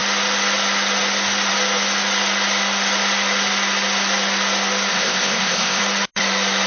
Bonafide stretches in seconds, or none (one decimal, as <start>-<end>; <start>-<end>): 0.0-4.9; 5.8-6.7